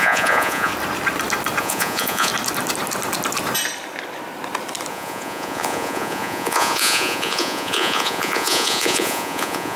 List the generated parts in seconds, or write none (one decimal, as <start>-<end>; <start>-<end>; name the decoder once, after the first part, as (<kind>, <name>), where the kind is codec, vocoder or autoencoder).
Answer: 0.0-0.7 (vocoder, Vocos); 1.6-2.3; 4.9-9.8